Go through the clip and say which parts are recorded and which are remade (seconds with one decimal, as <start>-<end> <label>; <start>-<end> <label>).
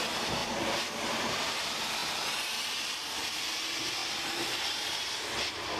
0.0-0.4 recorded; 0.4-1.6 remade; 1.6-5.8 recorded